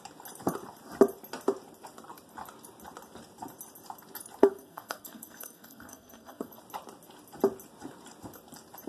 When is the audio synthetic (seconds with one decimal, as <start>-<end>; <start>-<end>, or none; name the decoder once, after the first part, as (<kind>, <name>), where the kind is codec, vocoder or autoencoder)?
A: 4.4-6.6 (codec, SNAC)